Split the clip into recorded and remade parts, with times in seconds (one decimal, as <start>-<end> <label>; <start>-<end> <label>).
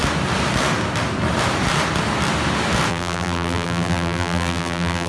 0.0-2.9 recorded; 2.9-5.1 remade